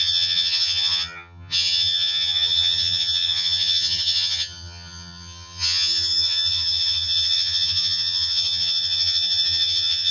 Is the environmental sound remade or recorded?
remade